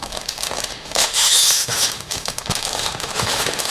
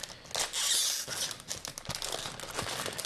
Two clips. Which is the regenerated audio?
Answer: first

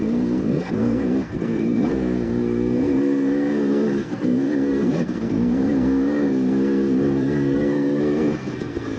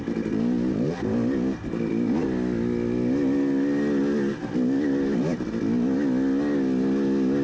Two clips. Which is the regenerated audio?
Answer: first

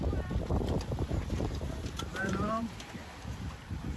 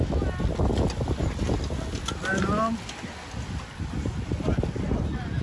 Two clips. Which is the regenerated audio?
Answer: first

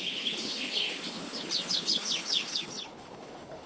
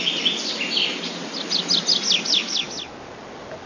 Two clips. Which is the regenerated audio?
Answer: first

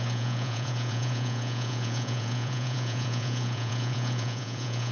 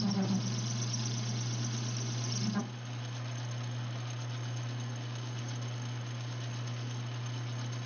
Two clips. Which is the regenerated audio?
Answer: first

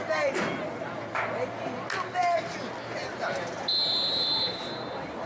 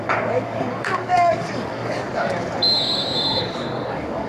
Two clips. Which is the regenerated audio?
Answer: second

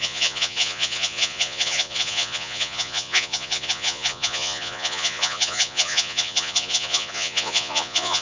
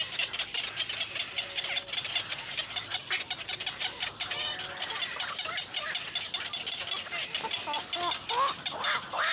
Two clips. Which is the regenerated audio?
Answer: first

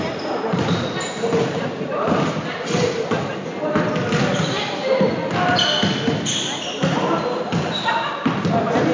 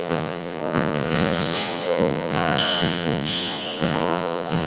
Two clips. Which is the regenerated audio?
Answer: second